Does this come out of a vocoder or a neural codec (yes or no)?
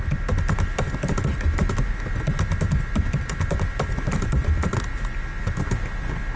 no